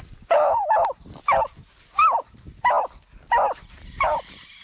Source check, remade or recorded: recorded